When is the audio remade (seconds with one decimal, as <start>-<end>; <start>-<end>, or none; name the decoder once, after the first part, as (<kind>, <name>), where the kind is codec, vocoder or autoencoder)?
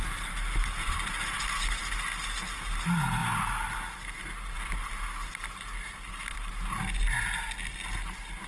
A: none